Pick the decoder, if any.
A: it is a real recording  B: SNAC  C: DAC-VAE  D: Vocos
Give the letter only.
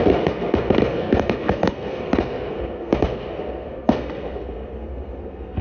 B